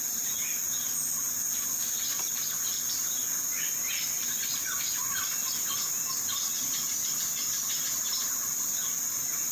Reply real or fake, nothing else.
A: real